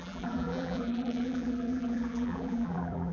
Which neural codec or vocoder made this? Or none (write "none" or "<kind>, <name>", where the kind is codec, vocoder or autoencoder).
vocoder, BigVGAN v2